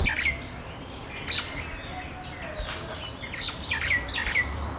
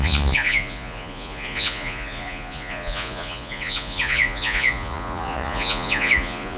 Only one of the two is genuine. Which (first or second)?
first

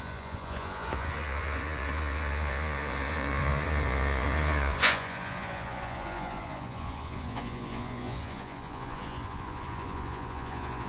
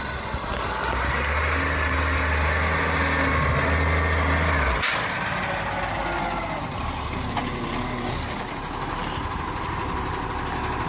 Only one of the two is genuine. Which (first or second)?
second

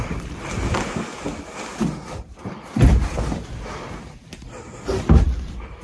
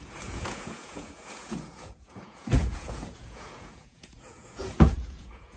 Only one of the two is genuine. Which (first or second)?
first